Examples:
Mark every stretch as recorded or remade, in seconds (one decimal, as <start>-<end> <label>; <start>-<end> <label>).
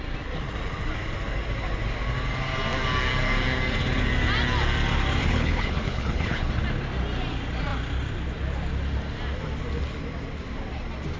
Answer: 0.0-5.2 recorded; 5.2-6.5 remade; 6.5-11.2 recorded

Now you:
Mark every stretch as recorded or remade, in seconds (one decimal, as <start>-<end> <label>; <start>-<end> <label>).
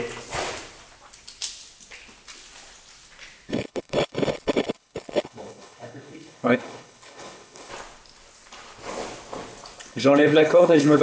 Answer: 0.0-3.5 recorded; 3.5-7.7 remade; 7.7-9.9 recorded; 9.9-11.0 remade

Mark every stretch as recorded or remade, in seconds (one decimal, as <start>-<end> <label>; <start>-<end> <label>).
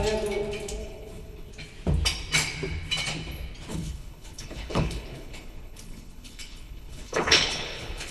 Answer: 0.0-0.8 recorded; 0.8-1.5 remade; 1.5-3.7 recorded; 3.7-8.1 remade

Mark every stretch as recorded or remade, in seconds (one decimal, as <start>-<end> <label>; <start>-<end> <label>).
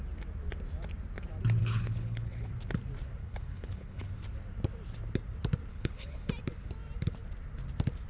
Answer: 0.0-1.6 recorded; 1.6-2.5 remade; 2.5-3.2 recorded; 3.2-4.1 remade; 4.1-5.7 recorded; 5.7-6.3 remade; 6.3-8.1 recorded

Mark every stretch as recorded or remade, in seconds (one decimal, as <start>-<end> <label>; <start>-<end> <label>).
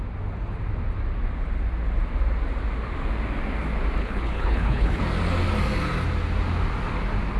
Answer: 0.0-4.0 recorded; 4.0-5.0 remade; 5.0-7.4 recorded